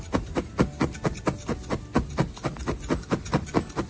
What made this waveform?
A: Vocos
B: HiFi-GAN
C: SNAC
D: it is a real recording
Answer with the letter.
D